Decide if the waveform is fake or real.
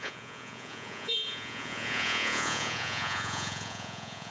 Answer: fake